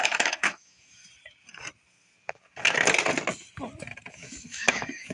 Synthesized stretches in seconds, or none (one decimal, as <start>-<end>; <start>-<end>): 0.0-1.0; 4.1-5.1